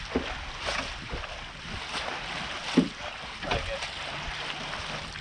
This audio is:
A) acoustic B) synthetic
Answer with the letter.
A